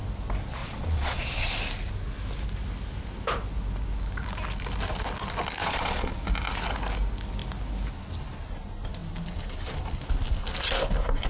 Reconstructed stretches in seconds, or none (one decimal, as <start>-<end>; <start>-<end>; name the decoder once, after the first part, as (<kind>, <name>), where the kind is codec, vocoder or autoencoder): 0.6-1.5 (vocoder, Vocos); 5.6-6.2